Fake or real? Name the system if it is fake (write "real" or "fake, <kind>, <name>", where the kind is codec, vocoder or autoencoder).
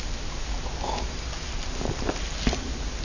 real